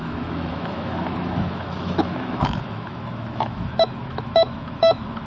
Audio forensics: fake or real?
fake